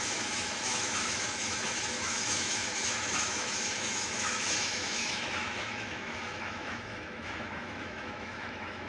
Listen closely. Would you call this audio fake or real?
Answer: fake